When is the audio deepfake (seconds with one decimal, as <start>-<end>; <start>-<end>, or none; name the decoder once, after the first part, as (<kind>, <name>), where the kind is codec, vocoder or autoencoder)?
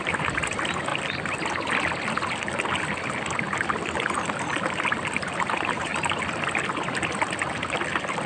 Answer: 0.0-0.9 (vocoder, BigVGAN v2); 5.2-5.9